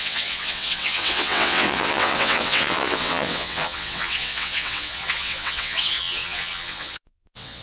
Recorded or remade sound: remade